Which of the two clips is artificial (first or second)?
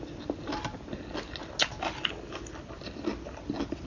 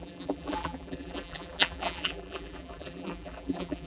second